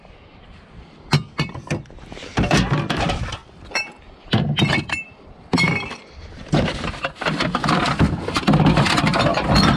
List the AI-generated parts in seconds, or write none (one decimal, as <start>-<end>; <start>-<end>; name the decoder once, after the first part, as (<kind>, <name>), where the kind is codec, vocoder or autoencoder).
3.4-8.4 (vocoder, BigVGAN v2)